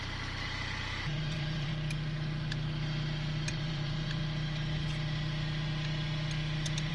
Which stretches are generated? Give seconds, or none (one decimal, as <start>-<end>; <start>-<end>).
0.0-1.7; 3.5-4.2